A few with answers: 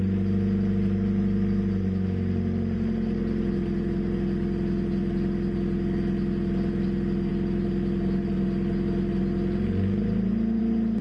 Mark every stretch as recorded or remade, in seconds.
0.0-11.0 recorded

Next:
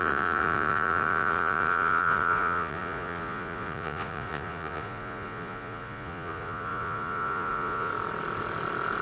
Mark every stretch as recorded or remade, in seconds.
0.0-7.9 remade; 7.9-9.0 recorded

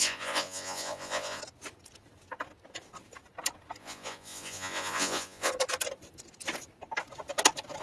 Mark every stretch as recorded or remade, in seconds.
0.0-1.4 remade; 1.4-3.8 recorded; 3.8-5.5 remade; 5.5-7.8 recorded

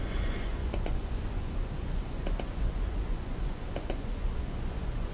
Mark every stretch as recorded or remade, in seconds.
0.0-5.1 remade